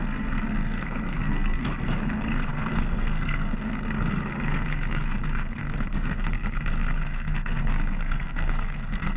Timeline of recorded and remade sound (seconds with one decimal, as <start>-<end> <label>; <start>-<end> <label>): 0.0-9.2 remade